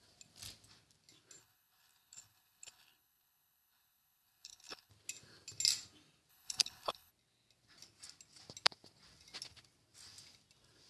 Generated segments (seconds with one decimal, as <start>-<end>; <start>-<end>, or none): 1.4-4.9; 6.3-7.1